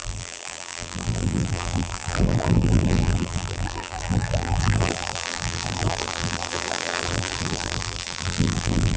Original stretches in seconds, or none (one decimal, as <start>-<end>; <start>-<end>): none